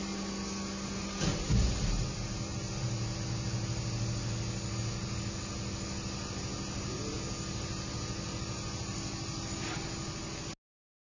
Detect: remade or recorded recorded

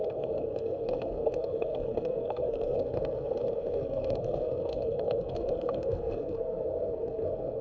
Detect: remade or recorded remade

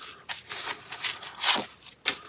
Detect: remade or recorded recorded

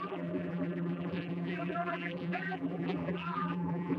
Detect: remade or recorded remade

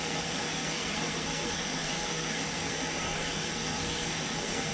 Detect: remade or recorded remade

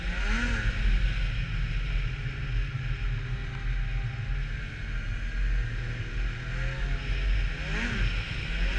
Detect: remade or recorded recorded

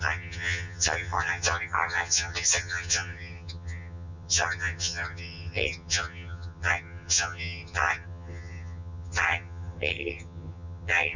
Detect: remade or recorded remade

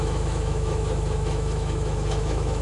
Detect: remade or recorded remade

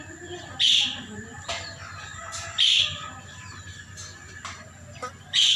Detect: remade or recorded recorded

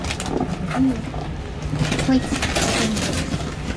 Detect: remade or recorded recorded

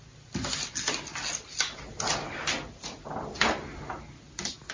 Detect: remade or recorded recorded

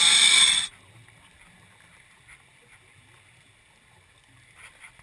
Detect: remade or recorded recorded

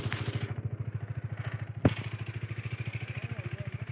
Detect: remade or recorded recorded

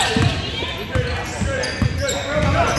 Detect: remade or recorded recorded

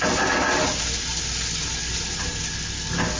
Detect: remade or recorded recorded